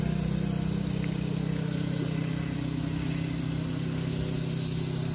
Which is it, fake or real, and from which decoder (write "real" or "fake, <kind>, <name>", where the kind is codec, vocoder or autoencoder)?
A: real